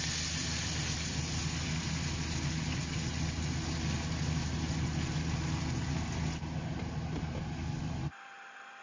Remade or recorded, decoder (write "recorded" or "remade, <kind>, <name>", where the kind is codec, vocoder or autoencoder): recorded